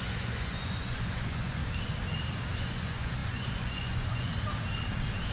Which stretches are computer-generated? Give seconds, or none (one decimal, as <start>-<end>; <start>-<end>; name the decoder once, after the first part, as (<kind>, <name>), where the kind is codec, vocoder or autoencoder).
0.0-1.6 (vocoder, Vocos); 2.6-4.3